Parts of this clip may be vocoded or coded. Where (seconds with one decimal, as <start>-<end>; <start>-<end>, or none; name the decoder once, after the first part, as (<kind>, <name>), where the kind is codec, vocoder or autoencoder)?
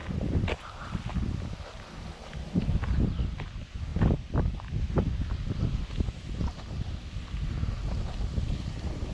none